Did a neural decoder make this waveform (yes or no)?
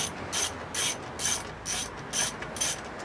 no